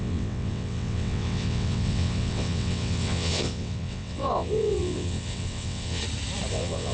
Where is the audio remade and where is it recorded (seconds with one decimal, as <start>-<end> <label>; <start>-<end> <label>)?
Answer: 0.0-6.0 remade; 6.0-6.5 recorded; 6.5-6.9 remade